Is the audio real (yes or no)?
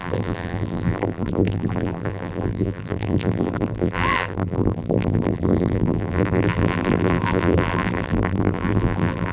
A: no